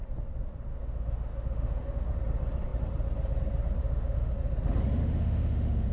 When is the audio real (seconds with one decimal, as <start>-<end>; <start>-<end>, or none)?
0.0-0.7; 2.1-3.8; 4.3-5.0